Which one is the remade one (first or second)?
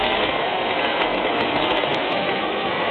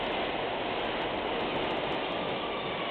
first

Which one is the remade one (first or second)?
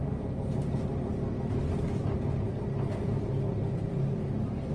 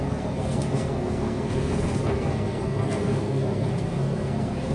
second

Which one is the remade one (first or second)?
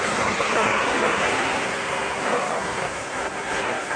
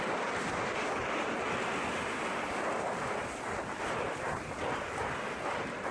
first